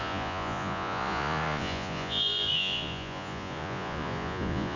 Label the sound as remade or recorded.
remade